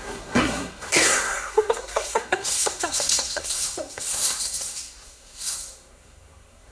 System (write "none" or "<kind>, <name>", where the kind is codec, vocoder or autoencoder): codec, SNAC